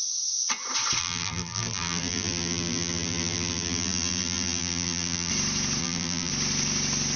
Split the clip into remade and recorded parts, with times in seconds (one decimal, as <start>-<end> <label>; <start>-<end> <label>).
0.0-1.0 recorded; 1.0-5.3 remade; 5.3-5.8 recorded; 5.8-6.3 remade; 6.3-7.2 recorded